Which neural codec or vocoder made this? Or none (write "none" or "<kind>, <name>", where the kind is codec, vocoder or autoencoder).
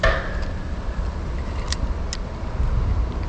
none